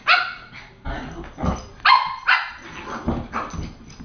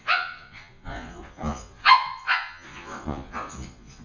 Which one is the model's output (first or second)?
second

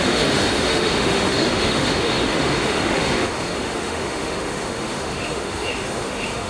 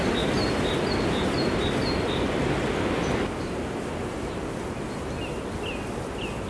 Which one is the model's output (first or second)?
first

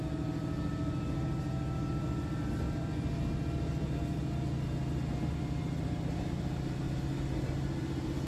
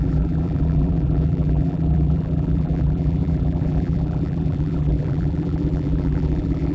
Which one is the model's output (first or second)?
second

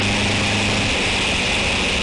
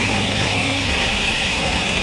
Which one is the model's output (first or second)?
second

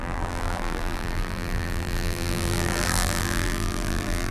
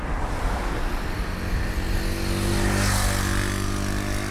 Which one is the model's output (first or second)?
first